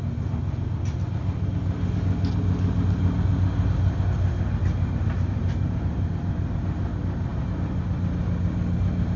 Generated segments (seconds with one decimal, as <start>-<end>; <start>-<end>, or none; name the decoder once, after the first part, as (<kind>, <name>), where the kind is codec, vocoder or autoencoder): 4.6-6.3 (vocoder, BigVGAN v2); 7.3-7.8